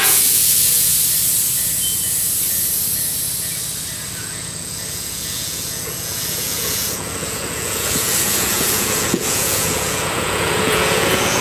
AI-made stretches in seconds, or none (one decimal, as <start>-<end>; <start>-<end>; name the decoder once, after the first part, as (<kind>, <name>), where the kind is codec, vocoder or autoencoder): 0.0-0.9 (vocoder, Vocos); 4.1-11.4